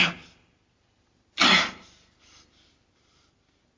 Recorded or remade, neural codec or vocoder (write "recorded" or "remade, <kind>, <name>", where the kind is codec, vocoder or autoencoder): recorded